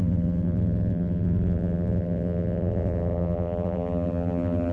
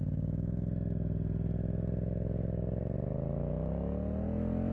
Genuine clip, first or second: second